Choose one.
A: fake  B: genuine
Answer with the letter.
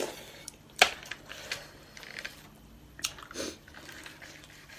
B